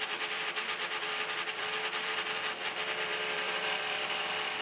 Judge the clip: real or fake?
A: fake